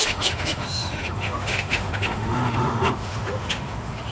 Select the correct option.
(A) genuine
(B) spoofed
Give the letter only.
B